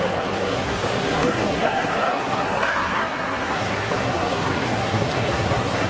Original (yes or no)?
no